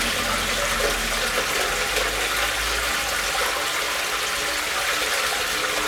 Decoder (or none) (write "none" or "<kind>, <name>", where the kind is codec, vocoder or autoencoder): none